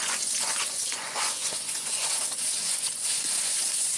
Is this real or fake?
fake